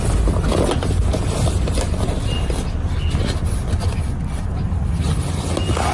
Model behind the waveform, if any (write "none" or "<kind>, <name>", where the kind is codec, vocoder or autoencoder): none